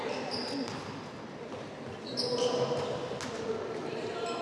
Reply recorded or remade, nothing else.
recorded